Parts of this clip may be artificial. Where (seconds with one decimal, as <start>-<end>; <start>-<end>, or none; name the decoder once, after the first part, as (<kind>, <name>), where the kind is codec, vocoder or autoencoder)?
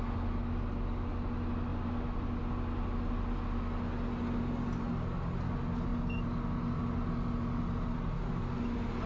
none